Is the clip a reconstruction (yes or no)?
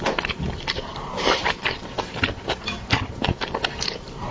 yes